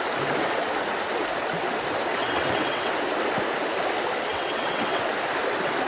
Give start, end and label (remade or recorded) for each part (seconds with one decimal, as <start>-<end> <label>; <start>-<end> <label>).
0.0-2.2 recorded; 2.2-2.9 remade; 2.9-4.3 recorded; 4.3-5.0 remade; 5.0-5.9 recorded